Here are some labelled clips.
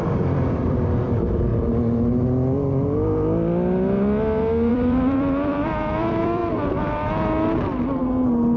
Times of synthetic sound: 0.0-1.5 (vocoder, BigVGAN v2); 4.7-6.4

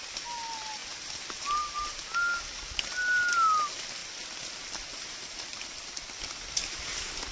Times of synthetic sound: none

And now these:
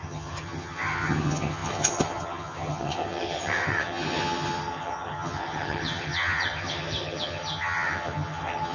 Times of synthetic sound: 0.0-8.7 (vocoder, HiFi-GAN)

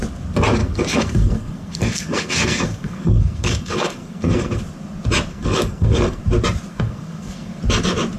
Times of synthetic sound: 0.6-4.6 (codec, SNAC); 5.3-6.2; 6.7-7.6